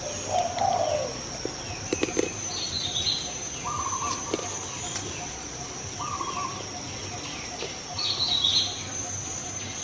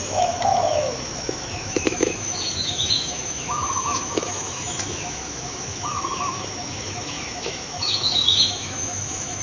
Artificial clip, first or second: second